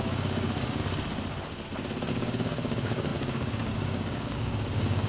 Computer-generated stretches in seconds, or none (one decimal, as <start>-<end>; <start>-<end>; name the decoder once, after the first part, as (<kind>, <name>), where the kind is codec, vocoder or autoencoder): 0.0-0.8 (codec, DAC); 2.1-5.1